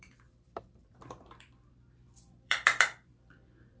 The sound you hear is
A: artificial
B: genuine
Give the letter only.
A